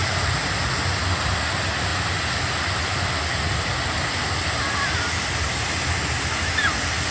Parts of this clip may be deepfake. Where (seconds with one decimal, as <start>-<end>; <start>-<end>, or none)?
none